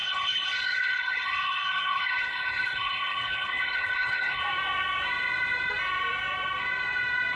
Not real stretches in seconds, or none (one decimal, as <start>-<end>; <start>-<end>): 0.0-4.4